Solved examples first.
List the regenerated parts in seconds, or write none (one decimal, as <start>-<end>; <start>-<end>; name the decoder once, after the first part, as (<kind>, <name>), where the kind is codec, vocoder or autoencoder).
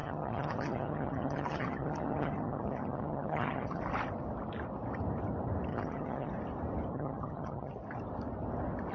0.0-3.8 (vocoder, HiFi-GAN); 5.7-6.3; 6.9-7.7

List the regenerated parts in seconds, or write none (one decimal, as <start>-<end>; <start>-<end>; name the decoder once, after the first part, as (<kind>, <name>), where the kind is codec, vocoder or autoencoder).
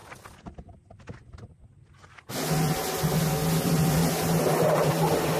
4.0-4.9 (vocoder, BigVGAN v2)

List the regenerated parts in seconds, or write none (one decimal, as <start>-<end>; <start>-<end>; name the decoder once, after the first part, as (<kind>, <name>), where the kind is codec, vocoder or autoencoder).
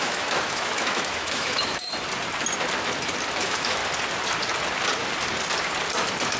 0.0-1.9 (autoencoder, DAC-VAE); 3.4-3.8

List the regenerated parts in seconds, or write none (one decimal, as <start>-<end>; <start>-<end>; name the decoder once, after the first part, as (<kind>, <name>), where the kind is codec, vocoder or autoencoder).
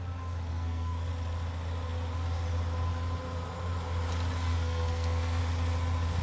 0.5-1.1 (codec, SNAC); 4.5-5.4